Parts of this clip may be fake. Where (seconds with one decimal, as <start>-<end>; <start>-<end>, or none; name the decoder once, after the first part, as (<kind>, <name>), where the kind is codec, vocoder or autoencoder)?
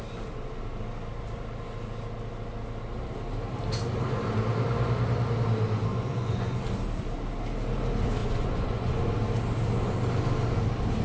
5.9-6.6 (vocoder, Vocos); 8.2-9.0